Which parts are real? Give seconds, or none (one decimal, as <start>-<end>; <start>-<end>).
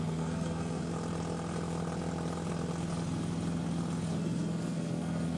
0.9-4.1